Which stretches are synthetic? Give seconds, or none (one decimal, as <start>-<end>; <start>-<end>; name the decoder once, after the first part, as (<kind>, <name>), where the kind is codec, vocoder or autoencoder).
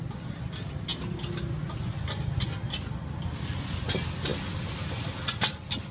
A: none